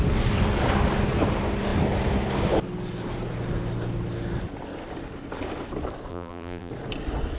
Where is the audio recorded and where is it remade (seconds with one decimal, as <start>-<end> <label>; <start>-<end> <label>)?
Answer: 0.0-6.1 recorded; 6.1-6.7 remade; 6.7-7.4 recorded

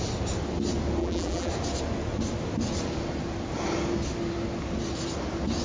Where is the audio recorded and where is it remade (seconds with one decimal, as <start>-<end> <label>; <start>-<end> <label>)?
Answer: 0.0-1.0 recorded; 1.0-1.5 remade; 1.5-5.6 recorded